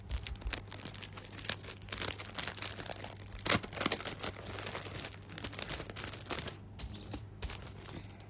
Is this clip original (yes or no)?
yes